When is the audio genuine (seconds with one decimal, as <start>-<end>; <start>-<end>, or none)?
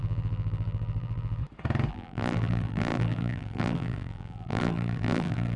1.4-1.9